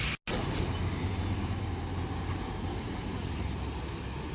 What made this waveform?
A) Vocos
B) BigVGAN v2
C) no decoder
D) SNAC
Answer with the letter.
C